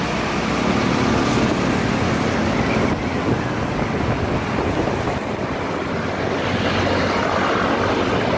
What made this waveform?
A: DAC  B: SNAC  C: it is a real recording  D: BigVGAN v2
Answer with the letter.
C